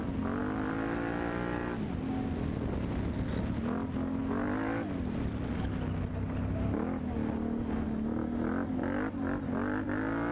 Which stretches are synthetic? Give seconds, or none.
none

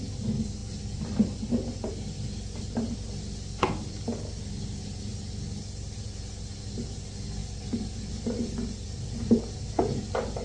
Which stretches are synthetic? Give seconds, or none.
0.6-1.9 (vocoder, BigVGAN v2)

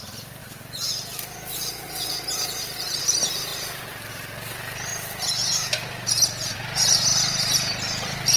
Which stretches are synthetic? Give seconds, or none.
0.0-0.4 (vocoder, BigVGAN v2); 3.0-3.5; 4.1-4.9; 6.5-7.1; 7.7-8.4

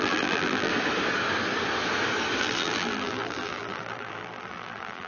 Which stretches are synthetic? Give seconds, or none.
0.0-0.7 (vocoder, BigVGAN v2); 2.4-5.1

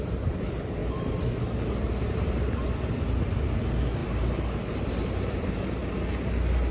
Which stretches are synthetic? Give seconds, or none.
0.0-5.8 (vocoder, BigVGAN v2)

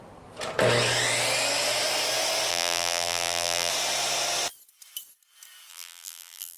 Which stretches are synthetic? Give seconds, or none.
2.5-3.7 (vocoder, BigVGAN v2); 5.7-6.6

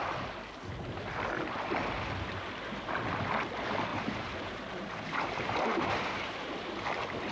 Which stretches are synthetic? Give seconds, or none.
3.9-6.7 (vocoder, BigVGAN v2)